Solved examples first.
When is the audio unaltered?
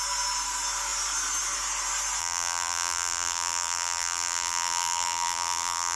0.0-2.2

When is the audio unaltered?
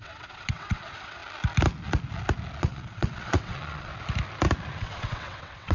1.2-2.6; 3.9-4.8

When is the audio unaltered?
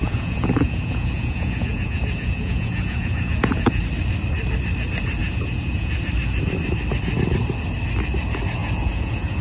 3.8-5.2; 5.9-8.6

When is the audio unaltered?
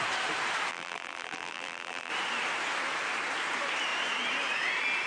0.0-0.7; 2.1-5.1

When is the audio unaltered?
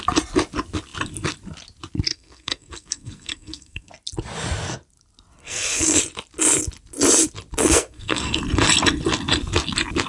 0.0-2.1; 3.9-5.4; 6.0-7.6; 8.4-10.1